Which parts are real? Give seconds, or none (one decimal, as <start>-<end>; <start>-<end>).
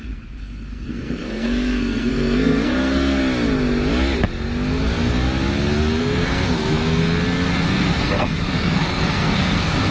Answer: 3.2-6.0; 7.0-7.7